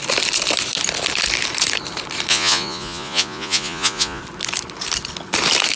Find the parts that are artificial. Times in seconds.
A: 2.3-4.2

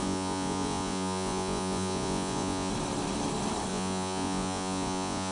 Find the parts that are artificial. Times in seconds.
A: 0.0-2.7; 3.7-5.3

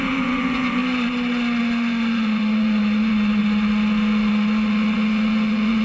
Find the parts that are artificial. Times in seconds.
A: 0.0-0.8; 1.6-3.4; 4.3-5.8

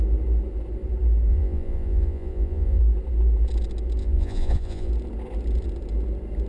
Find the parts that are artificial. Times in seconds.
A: 1.3-2.8; 4.0-4.9

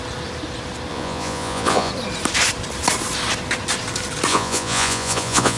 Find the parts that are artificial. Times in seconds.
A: 0.9-1.9; 4.3-5.6

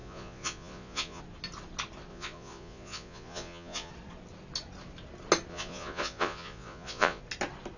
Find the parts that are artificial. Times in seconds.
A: 0.0-1.2; 2.1-3.9; 5.5-7.2

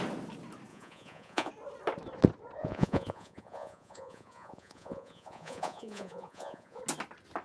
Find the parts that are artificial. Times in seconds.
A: 0.7-1.5; 2.6-6.8